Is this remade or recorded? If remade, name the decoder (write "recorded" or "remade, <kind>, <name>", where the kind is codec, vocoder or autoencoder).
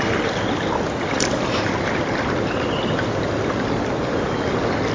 recorded